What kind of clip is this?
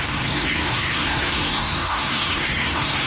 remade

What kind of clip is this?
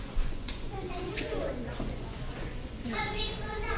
remade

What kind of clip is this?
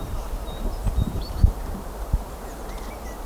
remade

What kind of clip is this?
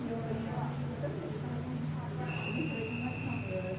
recorded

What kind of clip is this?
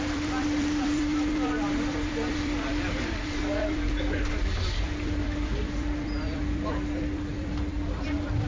remade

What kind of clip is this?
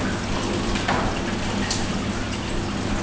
recorded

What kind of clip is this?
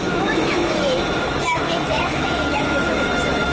remade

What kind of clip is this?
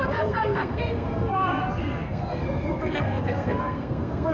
remade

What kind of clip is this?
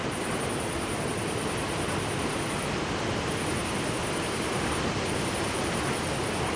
recorded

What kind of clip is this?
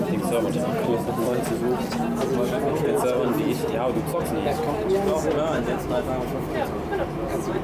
recorded